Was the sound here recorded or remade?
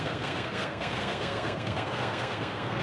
remade